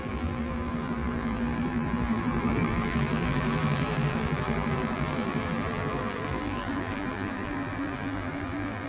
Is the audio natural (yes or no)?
no